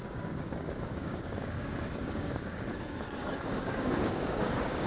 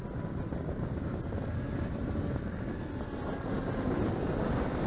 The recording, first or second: second